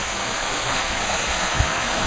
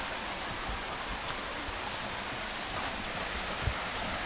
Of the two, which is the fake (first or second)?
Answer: first